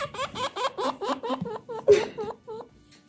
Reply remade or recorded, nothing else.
recorded